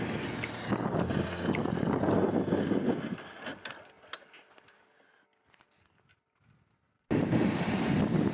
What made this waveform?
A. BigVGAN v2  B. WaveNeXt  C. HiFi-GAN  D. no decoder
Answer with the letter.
D